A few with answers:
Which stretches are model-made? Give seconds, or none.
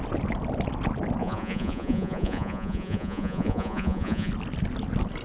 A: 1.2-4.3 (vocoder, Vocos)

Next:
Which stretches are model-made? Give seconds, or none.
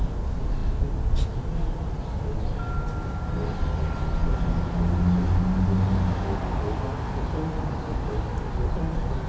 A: none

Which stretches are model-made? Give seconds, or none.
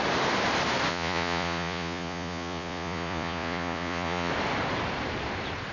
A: 0.9-4.3 (vocoder, Vocos)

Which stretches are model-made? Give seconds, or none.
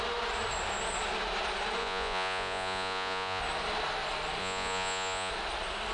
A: 1.8-3.4 (vocoder, Vocos); 4.4-5.3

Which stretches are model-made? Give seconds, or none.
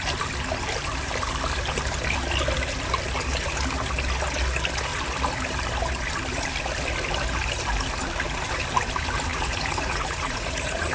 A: 9.3-10.9 (vocoder, Vocos)